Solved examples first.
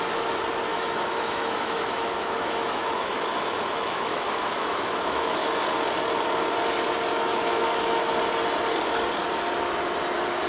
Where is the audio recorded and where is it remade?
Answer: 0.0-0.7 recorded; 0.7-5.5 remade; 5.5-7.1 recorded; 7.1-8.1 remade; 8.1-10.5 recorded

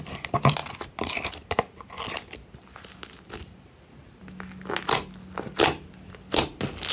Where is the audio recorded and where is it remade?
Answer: 0.0-6.9 recorded